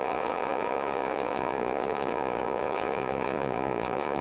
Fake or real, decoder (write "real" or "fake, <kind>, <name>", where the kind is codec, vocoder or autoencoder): fake, vocoder, Vocos